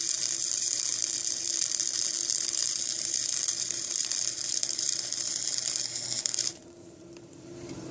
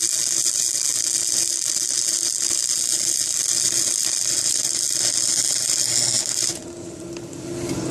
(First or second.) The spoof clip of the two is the first